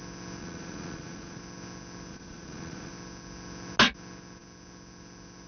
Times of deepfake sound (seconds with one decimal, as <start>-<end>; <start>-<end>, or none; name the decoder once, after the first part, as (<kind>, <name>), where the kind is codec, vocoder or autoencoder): 0.4-1.4 (vocoder, Vocos); 2.1-2.9